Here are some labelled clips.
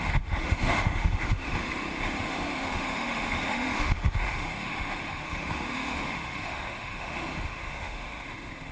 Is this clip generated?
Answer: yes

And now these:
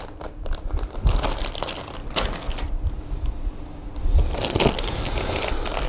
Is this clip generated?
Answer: no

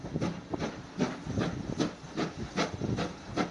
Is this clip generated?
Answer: no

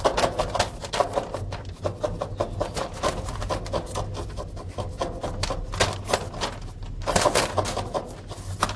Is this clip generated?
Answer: no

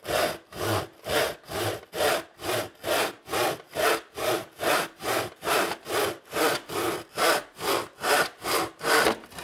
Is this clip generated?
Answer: no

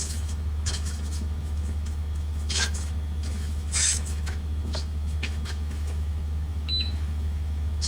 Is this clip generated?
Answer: yes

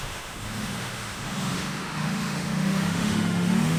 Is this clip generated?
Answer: yes